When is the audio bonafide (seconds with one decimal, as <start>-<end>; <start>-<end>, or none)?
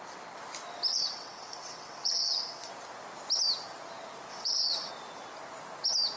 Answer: 0.0-0.9; 2.7-4.3; 4.9-6.2